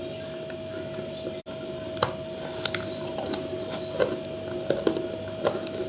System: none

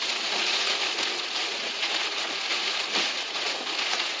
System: vocoder, Vocos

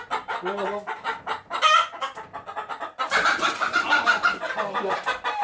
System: none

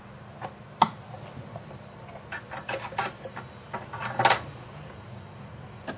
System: none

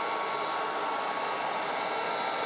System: none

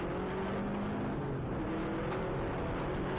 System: none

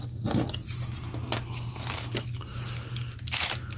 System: none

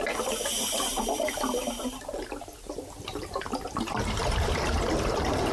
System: vocoder, BigVGAN v2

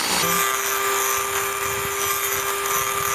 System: none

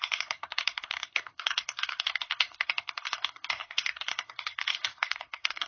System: codec, SNAC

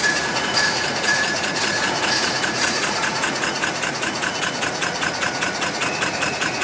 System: vocoder, Vocos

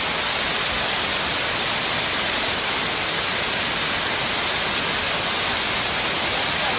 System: none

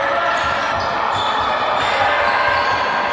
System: none